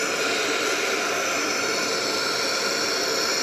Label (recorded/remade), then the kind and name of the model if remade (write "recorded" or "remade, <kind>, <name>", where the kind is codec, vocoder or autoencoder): recorded